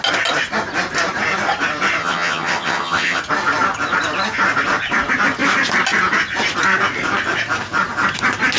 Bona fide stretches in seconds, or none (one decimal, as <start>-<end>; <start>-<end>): 0.0-2.0; 3.2-8.6